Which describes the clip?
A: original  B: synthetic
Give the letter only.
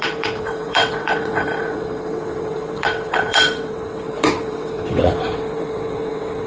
B